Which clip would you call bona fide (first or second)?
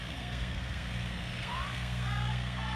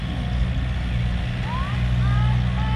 second